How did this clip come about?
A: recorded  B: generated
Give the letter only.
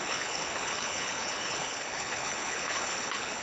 B